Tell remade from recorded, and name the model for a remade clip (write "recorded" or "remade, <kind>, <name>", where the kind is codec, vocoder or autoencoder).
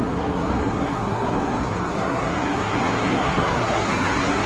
remade, codec, SNAC